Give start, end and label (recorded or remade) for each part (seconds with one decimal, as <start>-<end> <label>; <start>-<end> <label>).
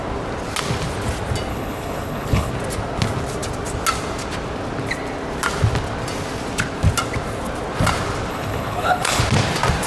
0.0-1.5 recorded; 1.5-2.5 remade; 2.5-8.3 recorded; 8.3-9.2 remade; 9.2-9.9 recorded